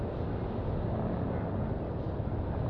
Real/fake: real